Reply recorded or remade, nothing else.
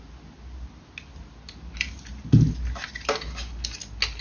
recorded